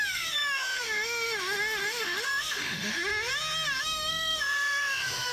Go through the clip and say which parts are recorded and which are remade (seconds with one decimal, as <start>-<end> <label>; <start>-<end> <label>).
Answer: 0.0-3.1 remade; 3.1-3.8 recorded; 3.8-5.3 remade